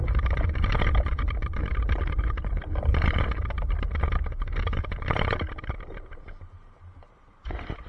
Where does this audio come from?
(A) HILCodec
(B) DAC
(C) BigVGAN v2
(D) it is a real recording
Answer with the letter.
C